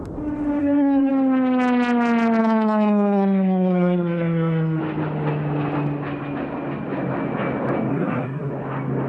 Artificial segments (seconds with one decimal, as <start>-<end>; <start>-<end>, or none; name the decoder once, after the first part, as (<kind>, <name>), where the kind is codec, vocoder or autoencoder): 0.6-1.1 (codec, SNAC); 2.4-4.8; 7.9-8.5